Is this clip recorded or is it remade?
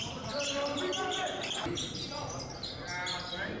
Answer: recorded